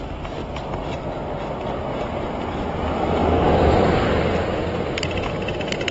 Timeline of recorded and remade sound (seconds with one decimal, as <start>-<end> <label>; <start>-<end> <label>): 0.0-5.9 recorded